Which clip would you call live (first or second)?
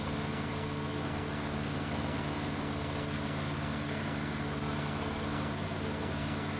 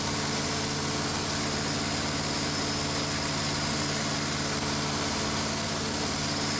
second